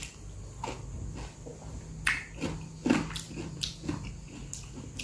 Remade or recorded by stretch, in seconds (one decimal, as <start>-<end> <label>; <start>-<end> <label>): 0.0-5.0 recorded